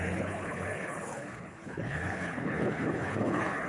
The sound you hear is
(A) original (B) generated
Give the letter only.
B